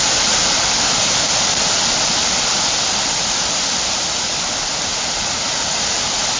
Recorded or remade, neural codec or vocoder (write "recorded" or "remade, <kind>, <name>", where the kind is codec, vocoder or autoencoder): recorded